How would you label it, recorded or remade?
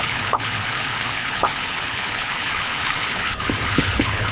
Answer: remade